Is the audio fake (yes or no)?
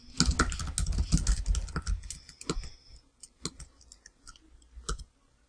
no